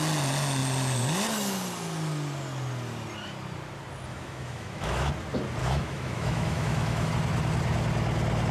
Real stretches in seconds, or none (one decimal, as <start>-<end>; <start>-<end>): 0.0-4.1; 5.1-5.6; 7.1-8.5